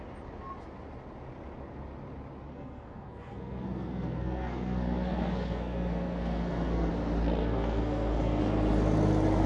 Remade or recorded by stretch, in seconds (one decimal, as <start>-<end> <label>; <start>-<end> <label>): 0.0-2.5 recorded; 2.5-6.9 remade; 6.9-7.4 recorded; 7.4-8.4 remade; 8.4-9.5 recorded